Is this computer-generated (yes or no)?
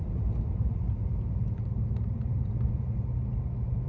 yes